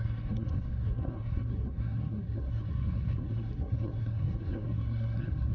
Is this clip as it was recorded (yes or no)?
no